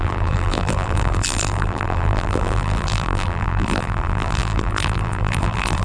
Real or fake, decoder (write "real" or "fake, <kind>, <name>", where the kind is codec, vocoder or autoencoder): fake, vocoder, BigVGAN v2